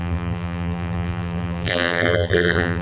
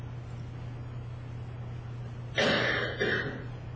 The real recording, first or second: second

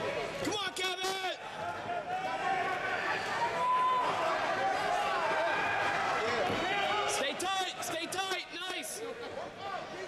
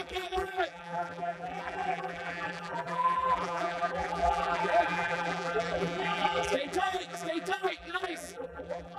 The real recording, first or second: first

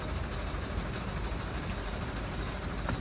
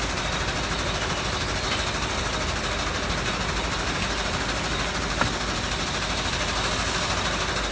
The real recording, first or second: second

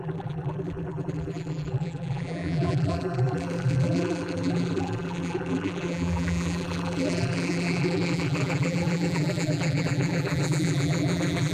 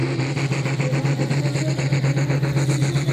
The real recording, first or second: second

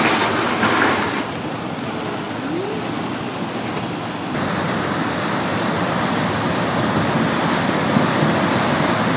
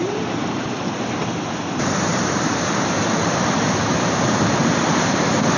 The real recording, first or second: first